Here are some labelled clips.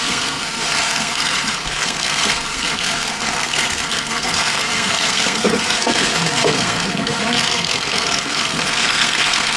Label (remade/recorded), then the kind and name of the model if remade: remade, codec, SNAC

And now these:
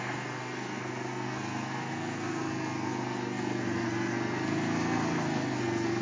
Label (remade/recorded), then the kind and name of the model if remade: remade, codec, SNAC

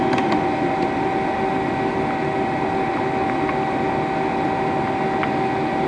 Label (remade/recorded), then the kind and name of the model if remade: recorded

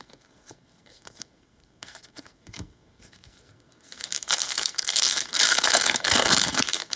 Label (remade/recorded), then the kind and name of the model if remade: remade, codec, SNAC